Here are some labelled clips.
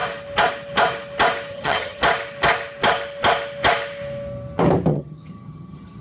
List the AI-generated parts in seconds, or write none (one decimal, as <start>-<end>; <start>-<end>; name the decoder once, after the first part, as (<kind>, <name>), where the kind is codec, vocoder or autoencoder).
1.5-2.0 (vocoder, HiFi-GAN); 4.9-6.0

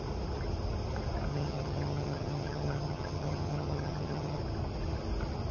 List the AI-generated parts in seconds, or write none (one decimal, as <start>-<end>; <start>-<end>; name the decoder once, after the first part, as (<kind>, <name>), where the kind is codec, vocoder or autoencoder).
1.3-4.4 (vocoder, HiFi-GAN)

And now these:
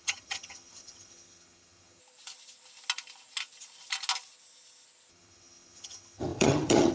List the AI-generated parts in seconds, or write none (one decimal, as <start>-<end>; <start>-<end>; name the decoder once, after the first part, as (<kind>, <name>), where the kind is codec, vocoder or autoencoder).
0.0-2.0 (vocoder, HiFi-GAN); 5.1-6.9

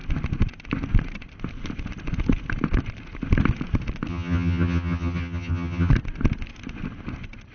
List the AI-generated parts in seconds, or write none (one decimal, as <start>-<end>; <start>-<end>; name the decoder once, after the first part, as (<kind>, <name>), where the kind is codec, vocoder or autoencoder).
4.1-5.9 (vocoder, HiFi-GAN)

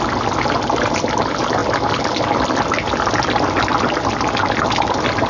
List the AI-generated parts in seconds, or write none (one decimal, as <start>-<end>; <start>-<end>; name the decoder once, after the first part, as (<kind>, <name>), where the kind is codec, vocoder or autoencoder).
none

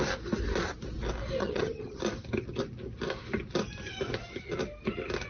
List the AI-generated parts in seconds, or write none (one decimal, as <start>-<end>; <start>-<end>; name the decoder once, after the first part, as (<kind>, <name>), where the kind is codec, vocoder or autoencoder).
1.4-2.0 (vocoder, HiFi-GAN)